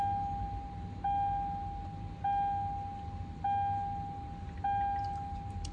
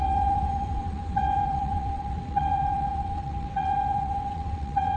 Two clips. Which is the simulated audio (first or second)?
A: second